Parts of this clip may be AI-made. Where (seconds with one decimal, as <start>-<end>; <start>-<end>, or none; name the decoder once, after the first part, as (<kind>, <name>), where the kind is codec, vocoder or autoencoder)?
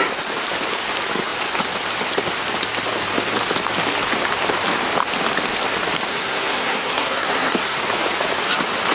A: 6.1-7.8 (codec, SNAC)